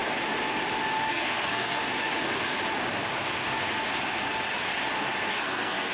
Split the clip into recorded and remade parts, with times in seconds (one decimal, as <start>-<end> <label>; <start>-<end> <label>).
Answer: 0.0-1.1 recorded; 1.1-1.8 remade; 1.8-5.3 recorded; 5.3-5.9 remade